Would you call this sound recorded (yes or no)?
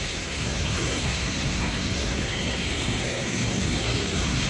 no